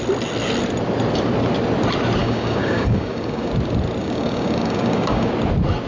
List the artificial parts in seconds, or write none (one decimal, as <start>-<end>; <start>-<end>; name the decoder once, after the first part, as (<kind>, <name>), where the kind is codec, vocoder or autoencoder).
2.2-3.5 (codec, DAC); 4.0-5.3